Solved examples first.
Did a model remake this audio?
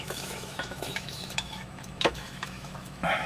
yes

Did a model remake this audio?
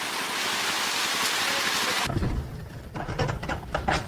no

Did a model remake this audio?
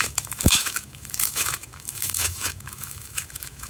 yes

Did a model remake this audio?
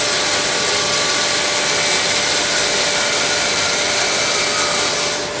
no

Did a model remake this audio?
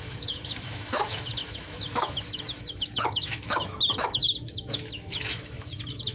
yes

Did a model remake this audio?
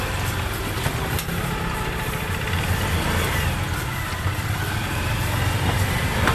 no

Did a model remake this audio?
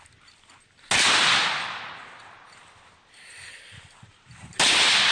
no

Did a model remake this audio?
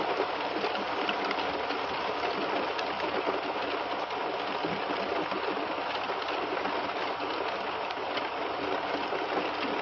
no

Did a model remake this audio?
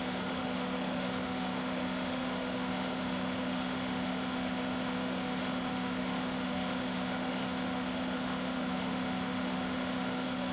yes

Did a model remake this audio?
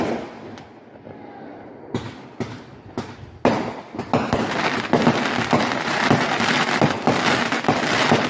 no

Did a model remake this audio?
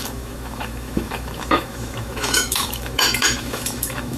yes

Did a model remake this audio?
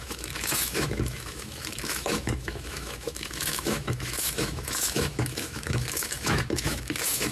yes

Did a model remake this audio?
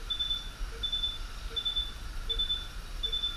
no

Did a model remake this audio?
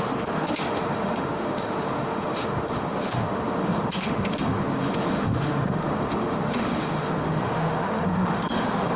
yes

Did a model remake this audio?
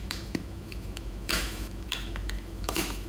yes